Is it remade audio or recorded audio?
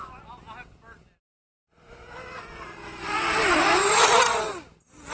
recorded